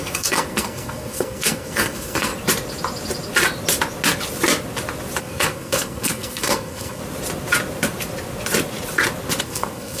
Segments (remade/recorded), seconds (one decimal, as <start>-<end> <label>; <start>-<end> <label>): 0.0-2.3 remade; 2.3-5.2 recorded; 5.2-7.0 remade; 7.0-9.4 recorded; 9.4-10.0 remade